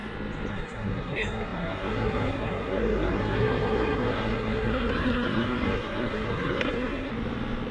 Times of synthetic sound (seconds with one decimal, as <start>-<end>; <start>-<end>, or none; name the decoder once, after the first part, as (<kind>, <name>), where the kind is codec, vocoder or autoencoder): 0.5-7.1 (codec, SNAC)